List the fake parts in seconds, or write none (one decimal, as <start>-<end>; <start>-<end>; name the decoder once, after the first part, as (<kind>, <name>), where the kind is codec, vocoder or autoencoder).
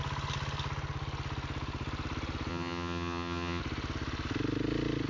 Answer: 2.5-3.6 (vocoder, HiFi-GAN)